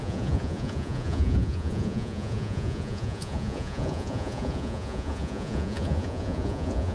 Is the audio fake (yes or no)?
yes